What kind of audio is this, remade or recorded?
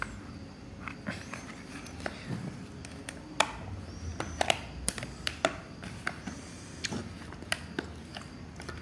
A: recorded